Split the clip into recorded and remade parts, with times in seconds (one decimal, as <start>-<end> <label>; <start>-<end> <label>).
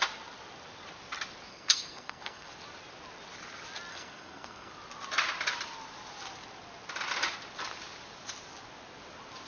0.0-1.5 recorded; 1.5-2.5 remade; 2.5-3.9 recorded; 3.9-4.7 remade; 4.7-9.5 recorded